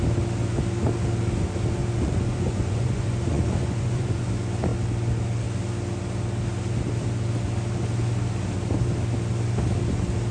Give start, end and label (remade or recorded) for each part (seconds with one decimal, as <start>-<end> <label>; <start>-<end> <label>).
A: 0.0-1.8 recorded; 1.8-4.3 remade; 4.3-10.3 recorded